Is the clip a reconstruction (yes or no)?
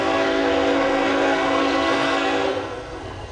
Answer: yes